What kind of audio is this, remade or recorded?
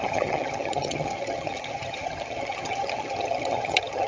remade